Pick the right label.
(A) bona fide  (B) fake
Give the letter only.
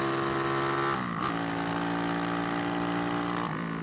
A